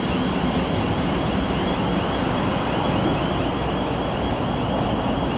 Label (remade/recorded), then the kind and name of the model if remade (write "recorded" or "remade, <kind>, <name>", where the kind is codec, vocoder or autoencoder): recorded